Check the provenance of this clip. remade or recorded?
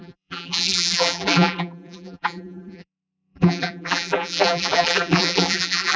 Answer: remade